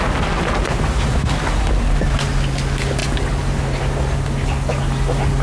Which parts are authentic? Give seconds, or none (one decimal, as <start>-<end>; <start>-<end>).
0.0-3.0; 3.8-5.4